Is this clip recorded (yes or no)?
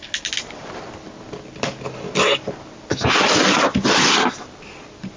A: yes